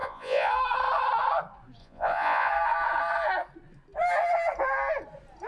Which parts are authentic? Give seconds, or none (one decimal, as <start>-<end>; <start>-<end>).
0.5-1.8; 2.5-5.5